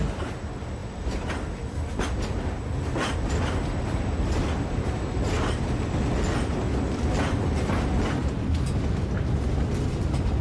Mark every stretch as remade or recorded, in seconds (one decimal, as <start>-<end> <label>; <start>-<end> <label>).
0.0-10.4 recorded